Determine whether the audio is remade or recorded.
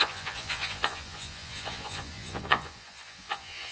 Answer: remade